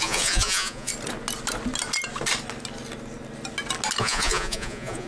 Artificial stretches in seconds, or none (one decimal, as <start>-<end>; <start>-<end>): 0.0-0.9; 4.0-5.1